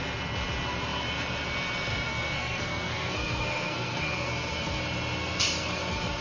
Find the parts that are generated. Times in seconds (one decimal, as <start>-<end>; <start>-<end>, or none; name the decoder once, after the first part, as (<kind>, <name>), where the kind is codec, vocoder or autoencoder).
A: 1.9-4.8 (codec, SNAC); 5.2-6.2

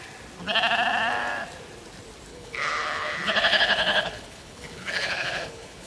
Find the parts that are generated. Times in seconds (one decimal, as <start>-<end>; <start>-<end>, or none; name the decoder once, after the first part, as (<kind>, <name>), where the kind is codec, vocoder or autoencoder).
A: 2.3-5.9 (codec, HILCodec)

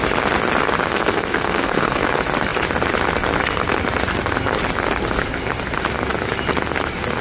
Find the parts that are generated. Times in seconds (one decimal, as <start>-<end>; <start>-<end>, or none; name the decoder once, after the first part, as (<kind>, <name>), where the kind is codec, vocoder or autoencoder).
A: 0.9-2.0 (codec, SNAC)

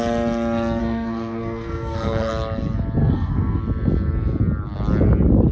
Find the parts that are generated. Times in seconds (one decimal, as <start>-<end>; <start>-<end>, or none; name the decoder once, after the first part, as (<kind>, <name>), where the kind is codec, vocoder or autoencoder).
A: 0.8-2.3 (codec, SNAC); 3.0-3.6